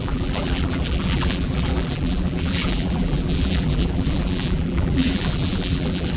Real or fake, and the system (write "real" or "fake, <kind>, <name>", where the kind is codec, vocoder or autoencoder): fake, vocoder, BigVGAN v2